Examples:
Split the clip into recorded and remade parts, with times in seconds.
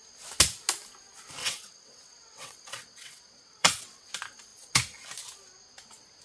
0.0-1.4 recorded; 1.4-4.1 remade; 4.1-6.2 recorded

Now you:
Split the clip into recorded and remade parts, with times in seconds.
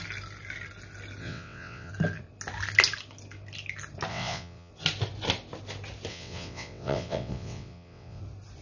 0.0-1.2 recorded; 1.2-1.9 remade; 1.9-4.1 recorded; 4.1-4.7 remade; 4.7-6.1 recorded; 6.1-8.2 remade; 8.2-8.6 recorded